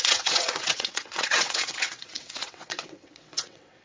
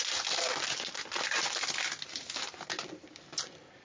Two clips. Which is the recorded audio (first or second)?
second